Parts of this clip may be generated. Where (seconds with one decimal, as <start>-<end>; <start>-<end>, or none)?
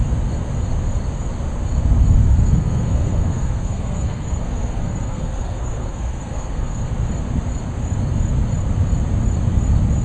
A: 2.2-6.9